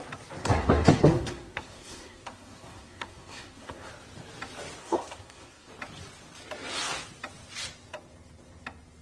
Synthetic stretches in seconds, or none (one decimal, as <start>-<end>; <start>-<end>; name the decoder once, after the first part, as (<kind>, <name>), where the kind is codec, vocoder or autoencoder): 0.4-3.9 (codec, SNAC); 4.8-5.7